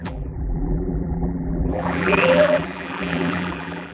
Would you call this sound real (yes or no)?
no